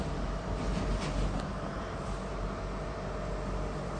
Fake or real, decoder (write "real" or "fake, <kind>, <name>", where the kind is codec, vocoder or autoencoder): real